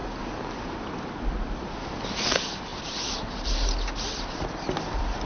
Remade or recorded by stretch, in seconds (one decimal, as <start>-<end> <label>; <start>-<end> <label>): 0.0-1.3 recorded; 1.3-2.7 remade; 2.7-4.1 recorded; 4.1-5.3 remade